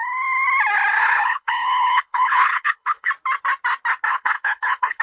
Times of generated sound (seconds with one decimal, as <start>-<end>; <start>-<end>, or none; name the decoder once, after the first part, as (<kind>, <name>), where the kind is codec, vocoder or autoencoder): 1.0-3.1 (codec, HILCodec); 4.1-5.0